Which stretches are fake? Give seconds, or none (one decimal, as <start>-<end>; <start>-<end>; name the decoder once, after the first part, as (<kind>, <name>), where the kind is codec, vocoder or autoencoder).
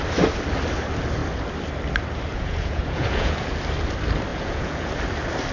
2.3-3.6 (vocoder, Vocos); 4.3-4.9